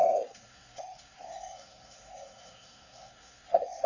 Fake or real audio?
fake